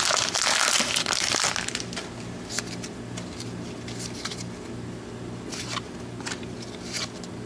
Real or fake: real